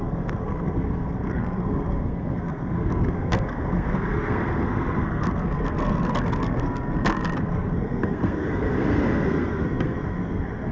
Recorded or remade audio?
remade